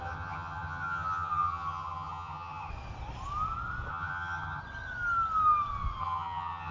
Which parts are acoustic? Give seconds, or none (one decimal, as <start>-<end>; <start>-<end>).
2.7-3.9; 4.6-6.0